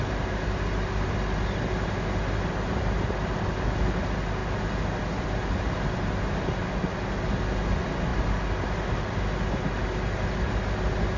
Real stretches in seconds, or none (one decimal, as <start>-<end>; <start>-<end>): 0.0-11.2